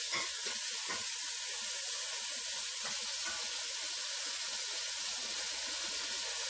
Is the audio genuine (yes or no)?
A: no